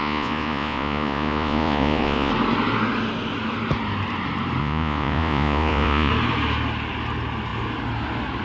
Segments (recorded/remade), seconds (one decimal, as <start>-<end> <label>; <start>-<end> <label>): 0.0-2.3 remade; 2.3-4.6 recorded; 4.6-6.1 remade; 6.1-8.4 recorded